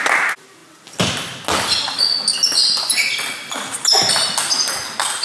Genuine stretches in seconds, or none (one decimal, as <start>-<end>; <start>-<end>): 0.0-5.2

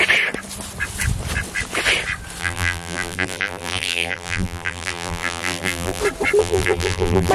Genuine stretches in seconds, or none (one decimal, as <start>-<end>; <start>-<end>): 0.0-2.4; 6.0-6.4

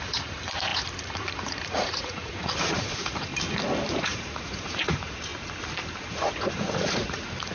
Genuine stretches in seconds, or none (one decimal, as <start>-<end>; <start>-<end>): 3.3-3.9; 5.3-6.1

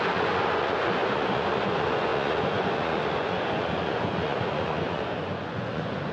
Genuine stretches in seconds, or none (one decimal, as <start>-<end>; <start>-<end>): none

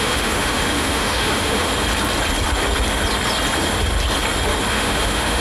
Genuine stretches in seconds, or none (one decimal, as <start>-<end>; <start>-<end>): 1.7-4.7

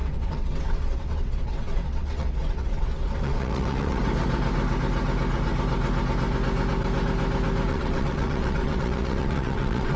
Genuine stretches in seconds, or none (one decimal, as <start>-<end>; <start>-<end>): 4.0-7.7

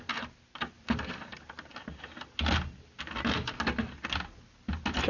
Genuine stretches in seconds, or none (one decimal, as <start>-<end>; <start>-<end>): 0.0-5.1

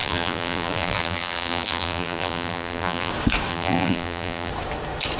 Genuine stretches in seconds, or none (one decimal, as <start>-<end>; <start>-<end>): 3.1-3.5; 4.5-5.2